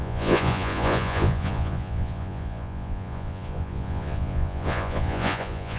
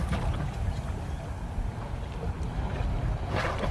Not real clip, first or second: first